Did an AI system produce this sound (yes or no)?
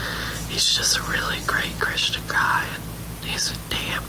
no